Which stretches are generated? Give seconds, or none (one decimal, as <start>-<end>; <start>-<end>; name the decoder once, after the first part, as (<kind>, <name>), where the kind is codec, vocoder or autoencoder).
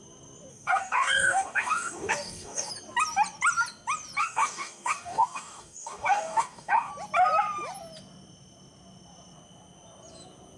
0.5-2.7 (codec, DAC); 4.2-6.9